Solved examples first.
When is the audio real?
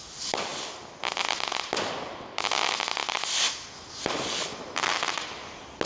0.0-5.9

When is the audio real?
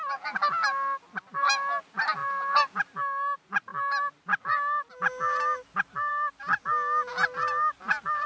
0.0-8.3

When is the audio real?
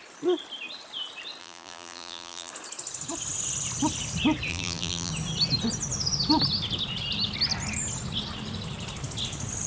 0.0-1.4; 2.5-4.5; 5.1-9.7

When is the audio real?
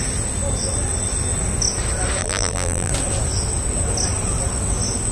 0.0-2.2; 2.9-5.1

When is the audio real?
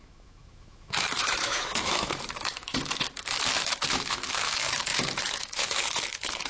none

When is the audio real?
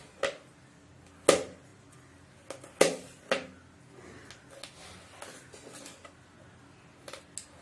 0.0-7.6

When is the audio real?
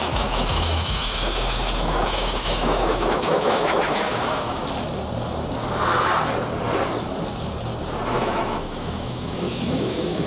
4.6-8.1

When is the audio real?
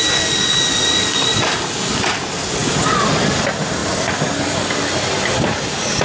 0.0-6.0